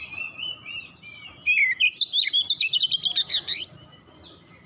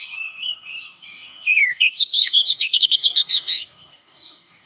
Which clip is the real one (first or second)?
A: first